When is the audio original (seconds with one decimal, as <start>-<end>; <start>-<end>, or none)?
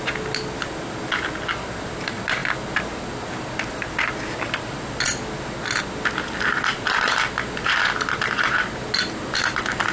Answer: 0.0-9.9